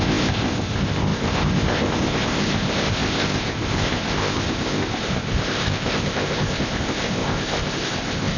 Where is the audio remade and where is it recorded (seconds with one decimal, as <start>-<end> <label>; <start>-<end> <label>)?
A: 0.0-8.4 remade